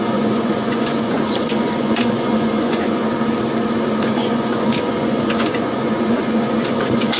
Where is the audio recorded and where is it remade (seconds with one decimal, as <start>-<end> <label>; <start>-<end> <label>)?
0.0-3.0 remade; 3.0-4.0 recorded; 4.0-7.2 remade